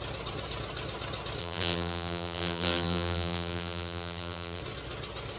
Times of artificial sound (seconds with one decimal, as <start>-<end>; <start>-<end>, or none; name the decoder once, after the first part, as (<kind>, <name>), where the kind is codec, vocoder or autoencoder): 1.4-4.6 (vocoder, BigVGAN v2)